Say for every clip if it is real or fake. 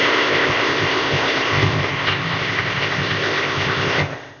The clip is fake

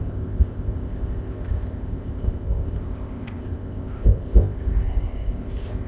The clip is fake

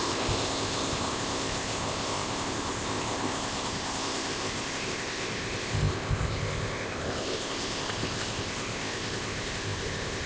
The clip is fake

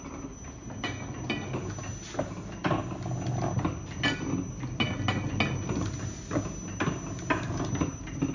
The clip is real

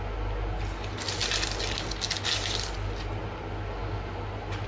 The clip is real